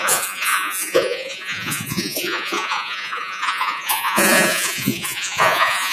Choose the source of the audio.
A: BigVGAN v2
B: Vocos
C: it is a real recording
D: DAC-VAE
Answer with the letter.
B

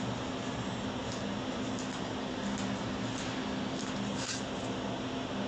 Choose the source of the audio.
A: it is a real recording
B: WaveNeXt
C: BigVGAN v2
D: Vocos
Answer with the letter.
A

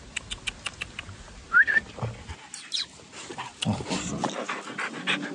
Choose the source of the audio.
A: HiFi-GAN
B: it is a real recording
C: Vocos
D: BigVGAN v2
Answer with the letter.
B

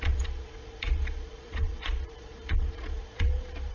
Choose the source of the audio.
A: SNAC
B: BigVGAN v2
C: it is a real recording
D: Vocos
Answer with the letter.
D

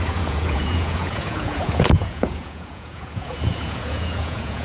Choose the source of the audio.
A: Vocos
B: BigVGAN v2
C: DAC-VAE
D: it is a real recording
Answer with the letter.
A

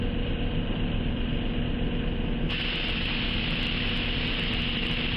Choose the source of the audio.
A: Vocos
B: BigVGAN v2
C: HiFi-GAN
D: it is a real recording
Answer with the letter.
D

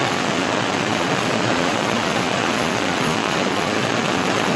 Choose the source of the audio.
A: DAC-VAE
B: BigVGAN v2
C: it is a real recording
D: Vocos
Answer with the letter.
D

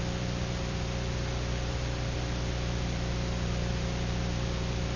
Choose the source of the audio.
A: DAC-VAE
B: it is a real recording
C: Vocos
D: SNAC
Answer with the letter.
B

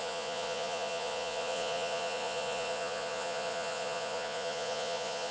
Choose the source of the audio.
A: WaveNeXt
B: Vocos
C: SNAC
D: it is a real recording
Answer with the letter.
B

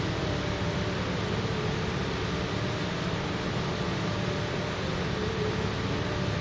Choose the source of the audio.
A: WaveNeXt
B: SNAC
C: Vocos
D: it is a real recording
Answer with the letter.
D